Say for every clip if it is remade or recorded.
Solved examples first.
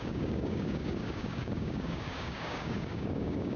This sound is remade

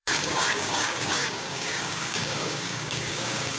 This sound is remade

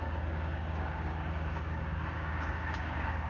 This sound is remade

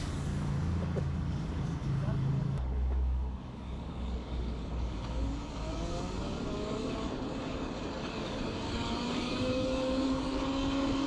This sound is remade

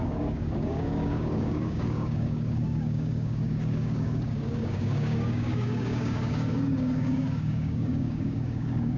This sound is remade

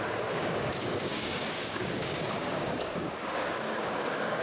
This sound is remade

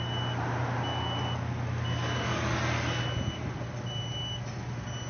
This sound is recorded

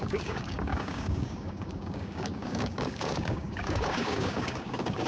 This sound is remade